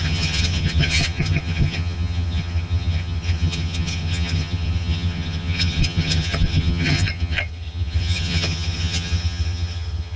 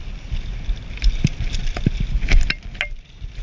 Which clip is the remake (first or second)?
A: first